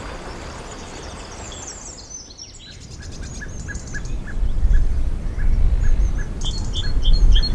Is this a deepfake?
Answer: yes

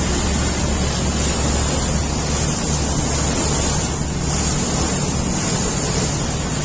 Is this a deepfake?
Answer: no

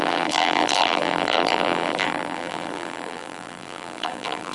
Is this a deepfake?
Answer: yes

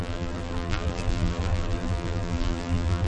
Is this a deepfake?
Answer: yes